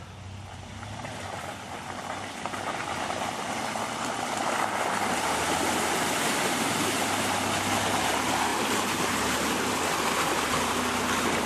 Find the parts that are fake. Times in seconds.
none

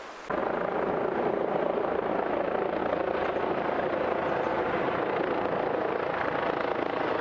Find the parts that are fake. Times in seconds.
none

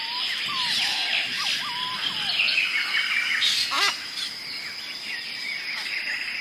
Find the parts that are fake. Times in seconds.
none

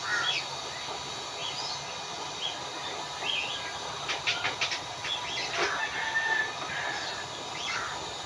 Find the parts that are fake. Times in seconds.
none

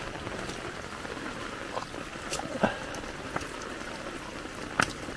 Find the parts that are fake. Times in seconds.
none

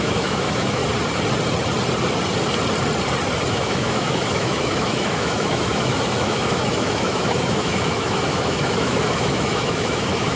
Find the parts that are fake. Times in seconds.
0.0-0.8; 3.5-10.4

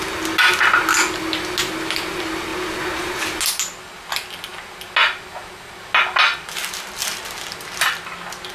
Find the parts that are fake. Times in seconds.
none

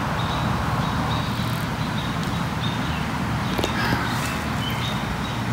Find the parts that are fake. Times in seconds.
none